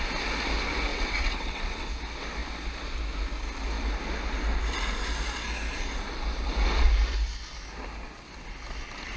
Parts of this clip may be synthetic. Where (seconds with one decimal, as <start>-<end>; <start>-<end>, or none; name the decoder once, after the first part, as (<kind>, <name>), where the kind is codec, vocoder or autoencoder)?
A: 0.9-1.9 (vocoder, WaveNeXt)